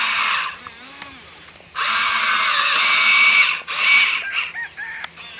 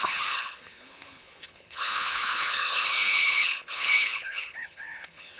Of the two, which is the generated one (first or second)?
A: second